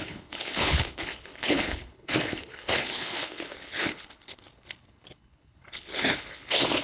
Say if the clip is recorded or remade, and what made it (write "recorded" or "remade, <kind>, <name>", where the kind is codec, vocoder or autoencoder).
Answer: remade, codec, HILCodec